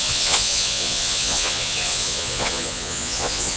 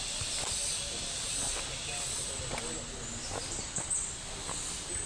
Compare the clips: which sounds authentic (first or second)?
second